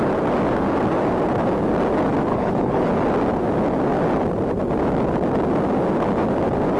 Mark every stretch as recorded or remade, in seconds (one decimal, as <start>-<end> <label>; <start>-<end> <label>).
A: 0.0-2.3 recorded; 2.3-2.9 remade; 2.9-6.8 recorded